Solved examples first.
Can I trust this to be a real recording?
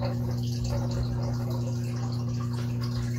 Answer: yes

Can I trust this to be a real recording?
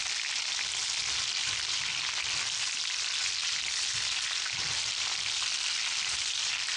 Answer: yes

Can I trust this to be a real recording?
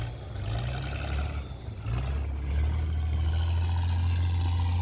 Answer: yes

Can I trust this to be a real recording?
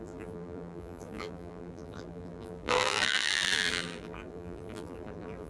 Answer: no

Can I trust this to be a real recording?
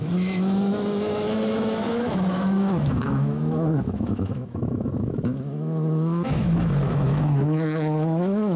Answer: no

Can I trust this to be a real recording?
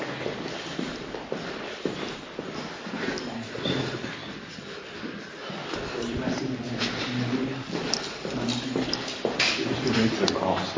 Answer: yes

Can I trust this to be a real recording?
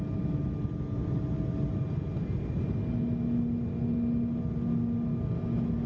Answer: yes